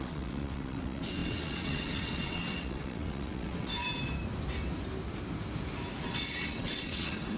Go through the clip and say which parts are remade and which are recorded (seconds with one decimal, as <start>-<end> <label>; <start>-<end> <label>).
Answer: 0.0-3.7 remade; 3.7-6.0 recorded; 6.0-7.4 remade